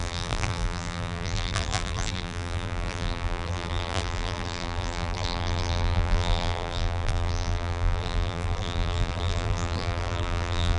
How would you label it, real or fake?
fake